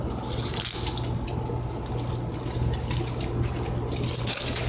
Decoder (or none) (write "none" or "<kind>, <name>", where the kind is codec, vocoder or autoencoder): none